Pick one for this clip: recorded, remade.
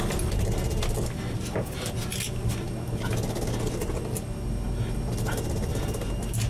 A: recorded